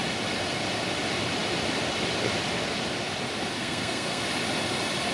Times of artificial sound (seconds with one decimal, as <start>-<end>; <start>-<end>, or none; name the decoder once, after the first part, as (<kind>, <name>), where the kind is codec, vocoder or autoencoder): 3.6-4.2 (codec, SNAC)